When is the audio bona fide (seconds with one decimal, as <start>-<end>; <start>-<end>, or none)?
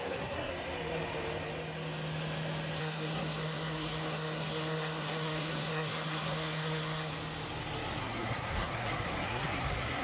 0.5-2.8; 7.1-8.0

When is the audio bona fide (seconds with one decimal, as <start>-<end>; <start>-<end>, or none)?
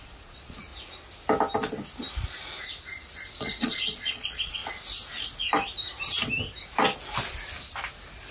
0.7-3.4; 4.6-8.3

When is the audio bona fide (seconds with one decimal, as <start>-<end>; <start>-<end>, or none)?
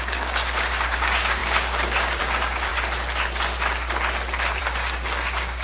2.7-4.6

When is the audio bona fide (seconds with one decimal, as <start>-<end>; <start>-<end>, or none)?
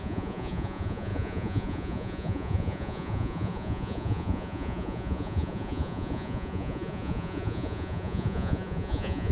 none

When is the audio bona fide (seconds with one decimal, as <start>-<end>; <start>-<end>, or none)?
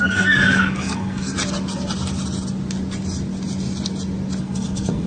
1.3-4.4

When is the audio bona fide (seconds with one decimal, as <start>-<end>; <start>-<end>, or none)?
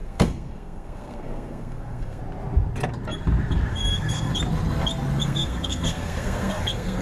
2.2-3.7; 4.3-5.2